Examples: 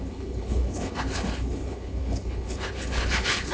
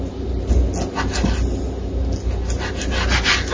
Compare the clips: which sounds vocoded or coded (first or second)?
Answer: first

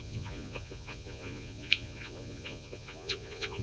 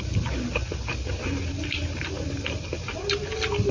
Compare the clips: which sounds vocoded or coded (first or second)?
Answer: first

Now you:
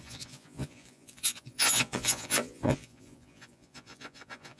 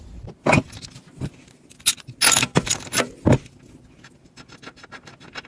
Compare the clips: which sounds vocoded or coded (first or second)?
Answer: first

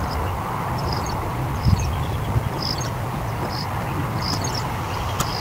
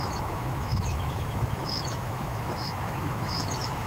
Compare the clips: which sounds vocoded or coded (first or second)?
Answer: second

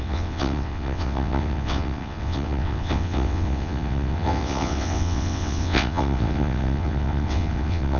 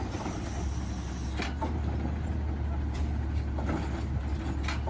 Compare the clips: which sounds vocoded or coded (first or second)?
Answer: first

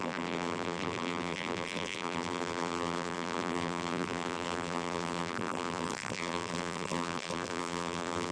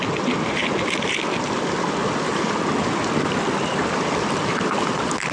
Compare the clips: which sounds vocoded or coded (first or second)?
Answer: first